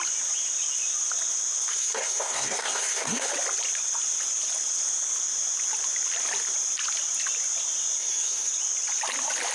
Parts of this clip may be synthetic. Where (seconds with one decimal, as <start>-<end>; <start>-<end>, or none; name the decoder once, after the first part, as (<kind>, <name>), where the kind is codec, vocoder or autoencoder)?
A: 1.7-3.3 (codec, SNAC); 8.0-8.5